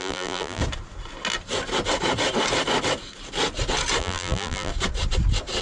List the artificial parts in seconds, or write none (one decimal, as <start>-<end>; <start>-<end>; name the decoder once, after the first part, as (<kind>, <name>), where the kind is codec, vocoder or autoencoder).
0.0-0.6 (vocoder, BigVGAN v2); 4.0-4.7